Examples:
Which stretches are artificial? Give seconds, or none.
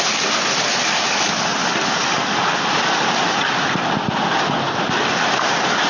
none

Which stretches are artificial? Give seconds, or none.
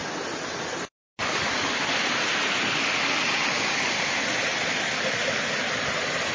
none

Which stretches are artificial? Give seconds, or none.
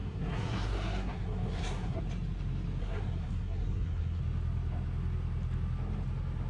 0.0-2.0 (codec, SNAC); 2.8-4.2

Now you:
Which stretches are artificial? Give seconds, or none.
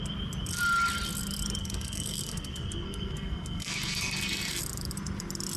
1.6-4.6 (codec, SNAC)